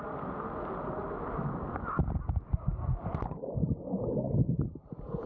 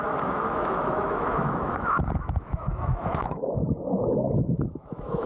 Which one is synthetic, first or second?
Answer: second